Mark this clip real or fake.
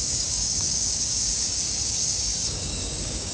fake